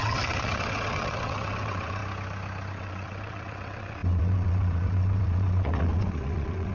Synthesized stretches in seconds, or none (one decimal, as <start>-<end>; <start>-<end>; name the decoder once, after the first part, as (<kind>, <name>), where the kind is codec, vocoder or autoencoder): 0.0-2.0 (vocoder, WaveNeXt); 2.7-6.7